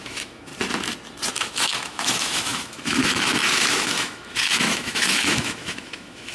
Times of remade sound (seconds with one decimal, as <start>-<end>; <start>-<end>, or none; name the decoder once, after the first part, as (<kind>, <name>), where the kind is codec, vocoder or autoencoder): 0.0-0.5 (autoencoder, DAC-VAE); 1.3-6.3

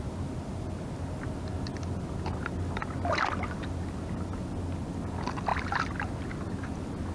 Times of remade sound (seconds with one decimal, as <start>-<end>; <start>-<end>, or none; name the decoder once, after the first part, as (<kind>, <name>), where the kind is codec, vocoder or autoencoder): none

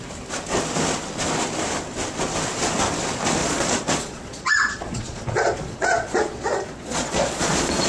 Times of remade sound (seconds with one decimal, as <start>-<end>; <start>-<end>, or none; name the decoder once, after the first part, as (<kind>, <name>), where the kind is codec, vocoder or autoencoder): 3.4-7.9 (vocoder, Vocos)